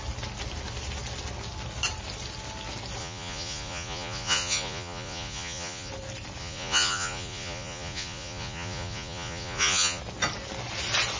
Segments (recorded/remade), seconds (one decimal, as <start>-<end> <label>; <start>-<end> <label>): 0.0-3.0 recorded; 3.0-5.9 remade; 5.9-6.4 recorded; 6.4-10.0 remade; 10.0-11.2 recorded